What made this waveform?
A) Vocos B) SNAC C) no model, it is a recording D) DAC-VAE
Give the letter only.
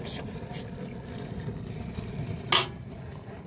C